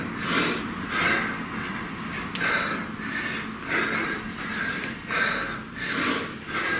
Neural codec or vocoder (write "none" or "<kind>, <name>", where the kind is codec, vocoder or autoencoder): none